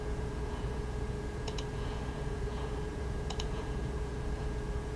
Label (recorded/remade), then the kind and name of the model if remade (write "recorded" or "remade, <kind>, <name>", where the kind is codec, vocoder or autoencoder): remade, vocoder, Vocos